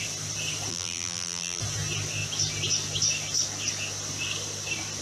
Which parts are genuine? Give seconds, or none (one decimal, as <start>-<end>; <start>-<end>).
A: 0.0-0.7; 1.6-5.0